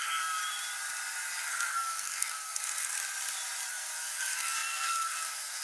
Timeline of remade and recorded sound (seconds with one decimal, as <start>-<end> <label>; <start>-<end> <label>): 0.0-0.4 remade; 0.4-1.4 recorded; 1.4-2.9 remade; 2.9-3.7 recorded; 3.7-5.6 remade